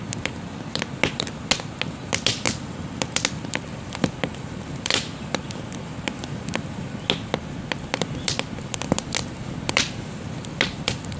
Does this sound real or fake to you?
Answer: real